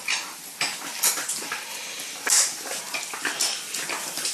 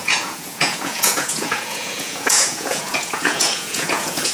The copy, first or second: second